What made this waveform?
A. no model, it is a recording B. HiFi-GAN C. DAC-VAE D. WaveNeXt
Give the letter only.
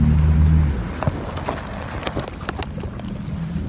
A